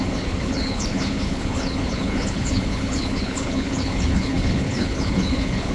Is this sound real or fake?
fake